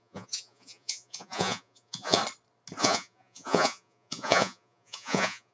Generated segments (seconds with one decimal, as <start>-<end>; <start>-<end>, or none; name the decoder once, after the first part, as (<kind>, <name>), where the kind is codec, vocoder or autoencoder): 0.0-2.2 (vocoder, Vocos); 2.8-5.5